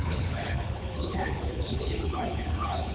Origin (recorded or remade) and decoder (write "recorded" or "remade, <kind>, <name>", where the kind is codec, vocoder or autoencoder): remade, codec, HILCodec